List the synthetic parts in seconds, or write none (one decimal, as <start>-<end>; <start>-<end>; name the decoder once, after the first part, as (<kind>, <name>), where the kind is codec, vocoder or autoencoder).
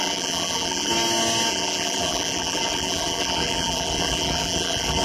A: 0.0-0.9 (vocoder, BigVGAN v2); 1.5-5.0